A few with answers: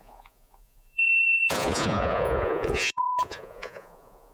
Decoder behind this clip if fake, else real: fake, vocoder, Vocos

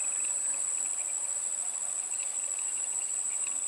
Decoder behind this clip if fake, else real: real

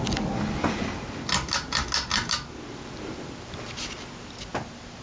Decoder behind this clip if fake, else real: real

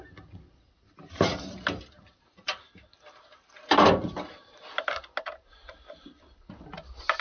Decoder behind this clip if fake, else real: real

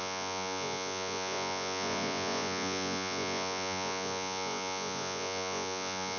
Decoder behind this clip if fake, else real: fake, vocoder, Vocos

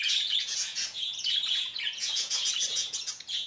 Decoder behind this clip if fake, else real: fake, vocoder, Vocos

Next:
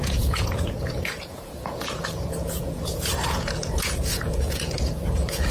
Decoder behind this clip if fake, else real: fake, vocoder, Vocos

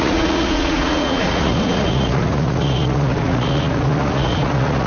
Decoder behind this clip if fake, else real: fake, vocoder, Vocos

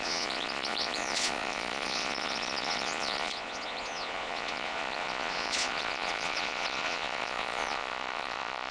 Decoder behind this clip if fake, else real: fake, vocoder, Vocos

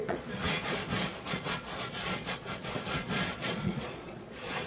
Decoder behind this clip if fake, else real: fake, vocoder, Vocos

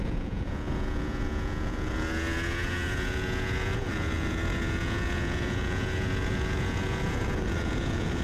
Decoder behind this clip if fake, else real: fake, vocoder, Vocos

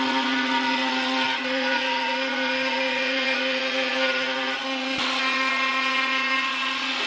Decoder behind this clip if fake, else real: fake, vocoder, Vocos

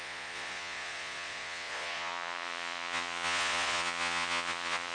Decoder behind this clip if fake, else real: fake, vocoder, Vocos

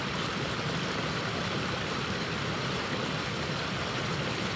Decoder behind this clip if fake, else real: real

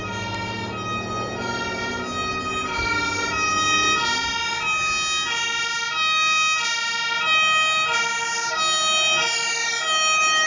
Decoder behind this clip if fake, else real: real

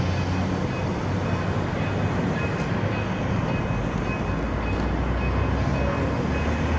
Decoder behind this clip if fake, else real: real